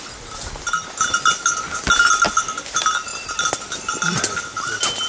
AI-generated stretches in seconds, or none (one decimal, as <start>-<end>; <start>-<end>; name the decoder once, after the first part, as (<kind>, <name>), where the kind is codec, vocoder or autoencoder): none